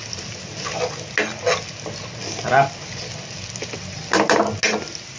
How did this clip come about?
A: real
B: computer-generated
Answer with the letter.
A